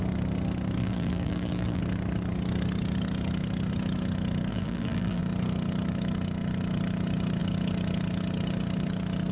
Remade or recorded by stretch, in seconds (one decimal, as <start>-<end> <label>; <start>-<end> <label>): 0.0-0.8 recorded; 0.8-1.8 remade; 1.8-4.5 recorded; 4.5-5.2 remade; 5.2-9.3 recorded